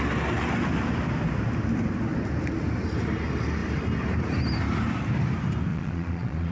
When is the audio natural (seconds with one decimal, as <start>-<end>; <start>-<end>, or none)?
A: 0.0-5.7

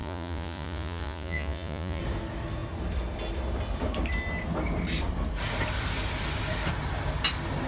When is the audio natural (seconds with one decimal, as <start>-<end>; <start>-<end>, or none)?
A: 2.0-7.7